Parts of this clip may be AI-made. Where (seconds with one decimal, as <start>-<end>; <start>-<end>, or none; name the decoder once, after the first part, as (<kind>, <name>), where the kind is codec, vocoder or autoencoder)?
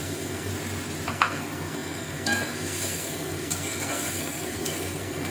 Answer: 0.0-0.5 (codec, SNAC); 1.1-5.3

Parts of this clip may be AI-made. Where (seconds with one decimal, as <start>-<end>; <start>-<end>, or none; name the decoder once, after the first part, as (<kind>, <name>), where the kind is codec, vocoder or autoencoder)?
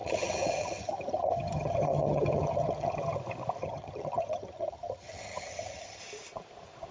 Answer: 0.0-3.2 (vocoder, HiFi-GAN); 3.6-6.0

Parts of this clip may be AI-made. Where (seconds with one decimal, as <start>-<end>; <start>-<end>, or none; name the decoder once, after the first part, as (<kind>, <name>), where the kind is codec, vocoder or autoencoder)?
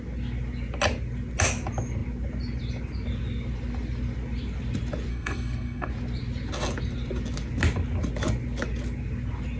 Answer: 5.1-5.9 (codec, SNAC)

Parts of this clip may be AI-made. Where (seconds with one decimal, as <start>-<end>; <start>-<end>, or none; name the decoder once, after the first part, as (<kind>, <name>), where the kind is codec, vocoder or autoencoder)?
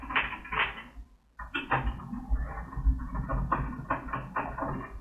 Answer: none